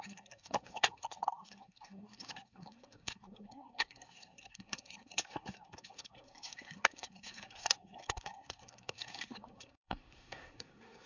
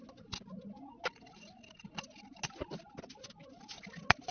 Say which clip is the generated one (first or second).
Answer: first